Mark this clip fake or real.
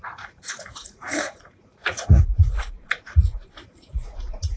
fake